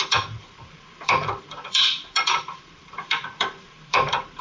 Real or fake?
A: fake